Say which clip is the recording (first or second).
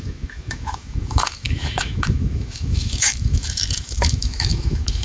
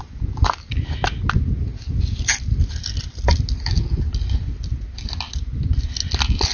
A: second